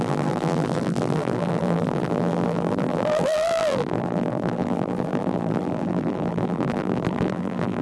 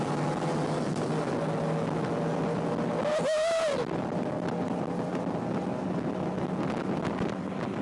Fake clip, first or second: first